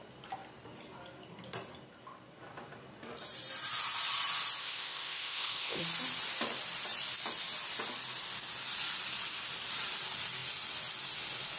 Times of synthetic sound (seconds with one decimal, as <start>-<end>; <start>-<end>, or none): 4.6-5.8